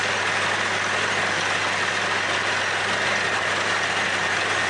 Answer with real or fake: real